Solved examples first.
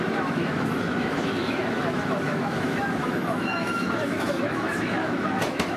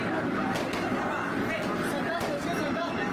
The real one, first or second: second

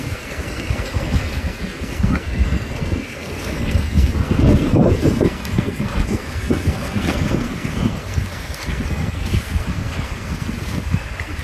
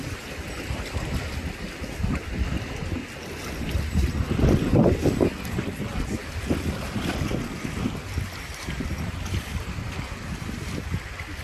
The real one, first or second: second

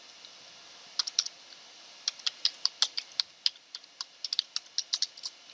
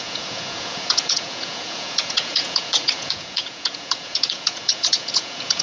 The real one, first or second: first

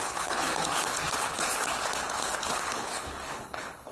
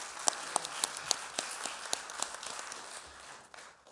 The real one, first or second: second